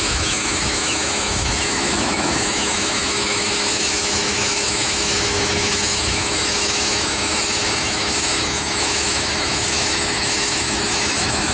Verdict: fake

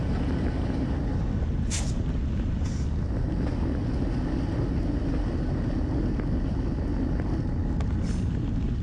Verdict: real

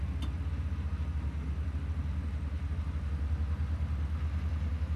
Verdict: real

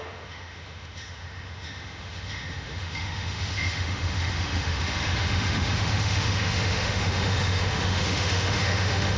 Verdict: fake